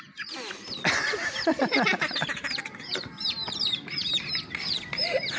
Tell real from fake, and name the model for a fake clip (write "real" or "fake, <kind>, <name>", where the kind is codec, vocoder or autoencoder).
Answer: fake, vocoder, BigVGAN v2